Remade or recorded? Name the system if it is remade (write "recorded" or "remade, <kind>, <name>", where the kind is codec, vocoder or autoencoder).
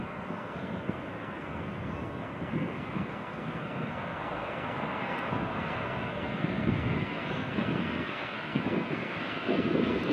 remade, codec, SNAC